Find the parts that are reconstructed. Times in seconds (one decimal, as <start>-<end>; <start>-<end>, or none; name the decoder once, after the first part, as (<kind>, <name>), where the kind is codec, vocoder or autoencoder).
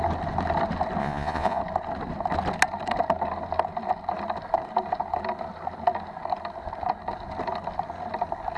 1.0-1.6 (vocoder, Vocos)